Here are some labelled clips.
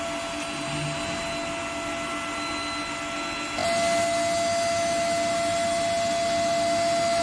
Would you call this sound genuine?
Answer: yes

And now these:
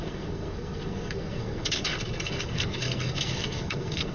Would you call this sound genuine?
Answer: no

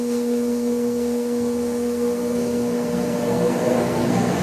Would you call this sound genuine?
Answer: no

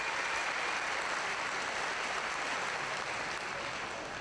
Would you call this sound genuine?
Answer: yes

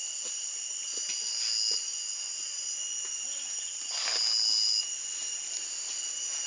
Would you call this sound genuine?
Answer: yes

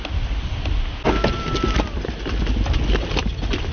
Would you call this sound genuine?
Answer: yes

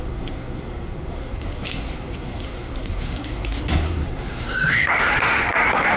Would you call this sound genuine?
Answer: no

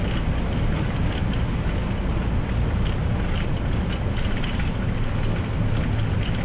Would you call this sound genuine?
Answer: yes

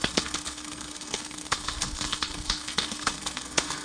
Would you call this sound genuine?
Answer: no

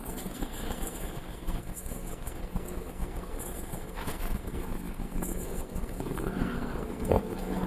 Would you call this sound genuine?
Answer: no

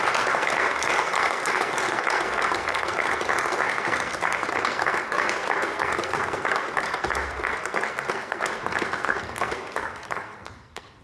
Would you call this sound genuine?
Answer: no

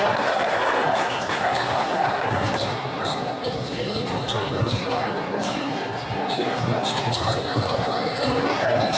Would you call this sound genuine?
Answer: no